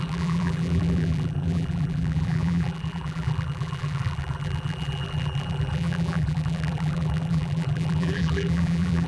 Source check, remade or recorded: remade